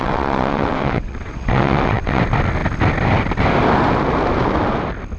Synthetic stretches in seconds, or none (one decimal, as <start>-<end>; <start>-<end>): 0.0-2.2